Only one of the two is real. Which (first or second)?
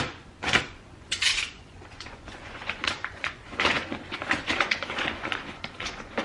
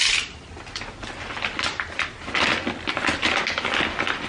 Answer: second